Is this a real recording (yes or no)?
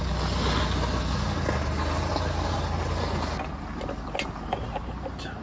yes